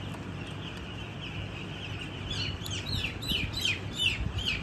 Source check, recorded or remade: remade